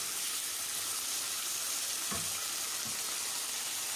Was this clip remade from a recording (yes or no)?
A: no